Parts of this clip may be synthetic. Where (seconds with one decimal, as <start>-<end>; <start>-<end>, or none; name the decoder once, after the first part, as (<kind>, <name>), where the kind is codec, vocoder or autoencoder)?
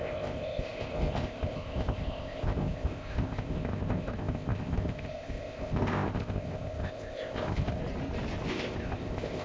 0.0-7.8 (codec, ZipCodec); 8.5-9.4